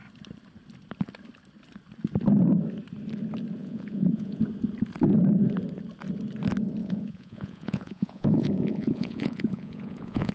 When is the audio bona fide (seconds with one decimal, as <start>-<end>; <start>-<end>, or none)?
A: 0.0-3.6; 4.4-6.8